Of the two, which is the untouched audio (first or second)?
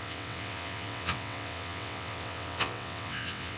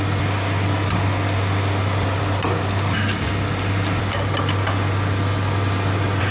second